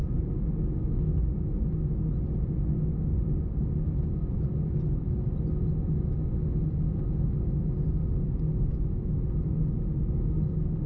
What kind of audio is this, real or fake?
real